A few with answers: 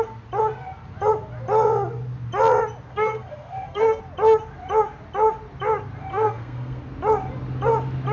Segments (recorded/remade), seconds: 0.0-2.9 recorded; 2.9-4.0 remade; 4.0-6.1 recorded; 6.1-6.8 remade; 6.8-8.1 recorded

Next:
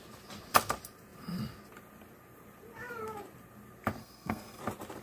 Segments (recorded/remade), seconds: 0.0-4.0 recorded; 4.0-4.6 remade; 4.6-5.0 recorded

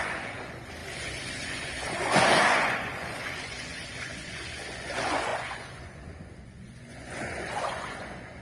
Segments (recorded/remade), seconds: 0.0-8.4 remade

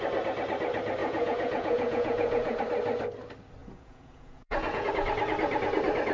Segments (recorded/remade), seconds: 0.0-1.0 recorded; 1.0-2.6 remade; 2.6-3.6 recorded; 3.6-4.9 remade; 4.9-6.1 recorded

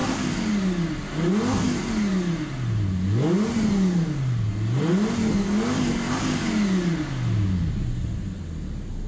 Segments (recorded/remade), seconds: 0.0-9.1 recorded

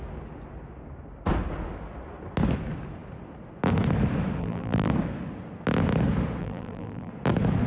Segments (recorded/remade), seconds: 0.0-4.4 recorded; 4.4-4.9 remade; 4.9-6.4 recorded; 6.4-7.1 remade; 7.1-7.7 recorded

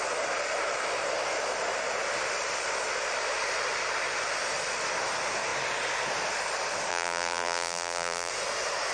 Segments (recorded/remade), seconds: 0.0-6.9 recorded; 6.9-8.3 remade; 8.3-8.9 recorded

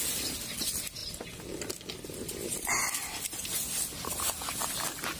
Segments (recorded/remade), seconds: 0.0-5.2 recorded